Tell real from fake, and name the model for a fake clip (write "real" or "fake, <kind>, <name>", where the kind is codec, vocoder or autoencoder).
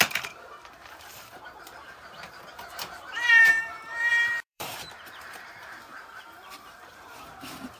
fake, vocoder, BigVGAN v2